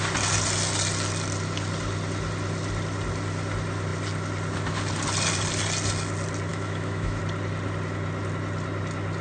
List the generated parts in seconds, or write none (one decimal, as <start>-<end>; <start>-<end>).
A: 6.5-7.2